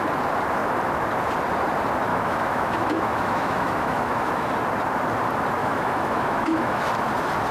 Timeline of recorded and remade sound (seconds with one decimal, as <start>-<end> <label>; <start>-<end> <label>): 0.0-2.1 recorded; 2.1-4.5 remade; 4.5-5.6 recorded; 5.6-6.8 remade; 6.8-7.5 recorded